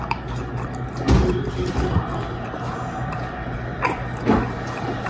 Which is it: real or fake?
real